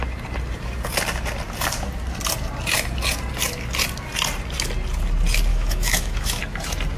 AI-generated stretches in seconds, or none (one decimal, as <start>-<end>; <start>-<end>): 5.5-6.4